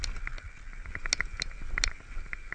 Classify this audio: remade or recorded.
recorded